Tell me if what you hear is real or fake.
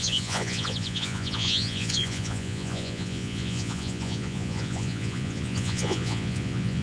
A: fake